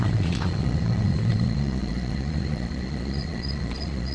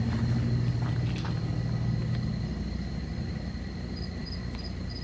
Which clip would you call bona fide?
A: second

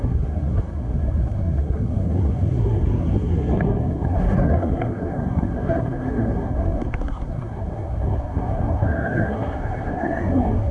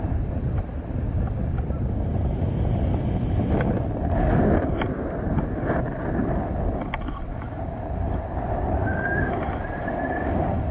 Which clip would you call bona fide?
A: second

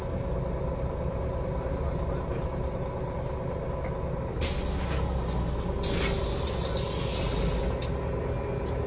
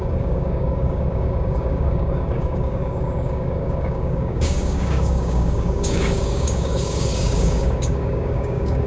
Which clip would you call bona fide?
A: first